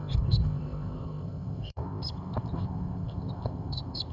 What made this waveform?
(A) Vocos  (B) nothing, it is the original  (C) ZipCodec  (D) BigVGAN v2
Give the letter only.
C